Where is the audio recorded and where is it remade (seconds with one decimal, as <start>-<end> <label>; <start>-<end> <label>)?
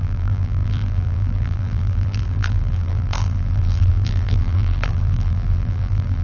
0.0-6.2 remade